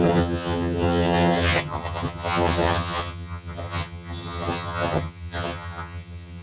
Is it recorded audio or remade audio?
remade